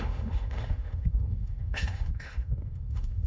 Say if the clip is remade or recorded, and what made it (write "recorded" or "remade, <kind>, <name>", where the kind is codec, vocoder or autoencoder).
remade, autoencoder, DAC-VAE